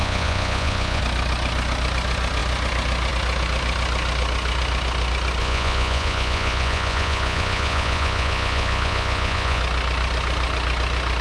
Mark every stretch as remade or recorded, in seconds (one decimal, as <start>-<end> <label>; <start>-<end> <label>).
0.0-1.0 remade; 1.0-5.4 recorded; 5.4-9.6 remade; 9.6-11.2 recorded